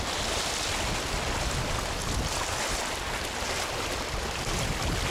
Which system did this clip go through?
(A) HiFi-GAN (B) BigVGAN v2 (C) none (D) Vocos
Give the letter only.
C